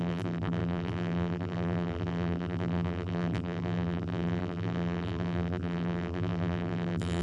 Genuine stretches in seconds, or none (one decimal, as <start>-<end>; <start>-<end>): none